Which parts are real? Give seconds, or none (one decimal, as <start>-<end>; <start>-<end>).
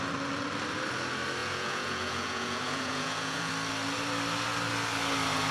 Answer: 0.0-1.4; 3.5-5.5